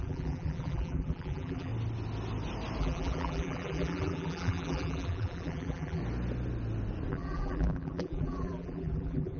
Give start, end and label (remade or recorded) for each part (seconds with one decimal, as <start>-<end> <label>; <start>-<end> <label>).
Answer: 0.0-1.7 remade; 1.7-2.8 recorded; 2.8-6.0 remade; 6.0-7.1 recorded; 7.1-9.4 remade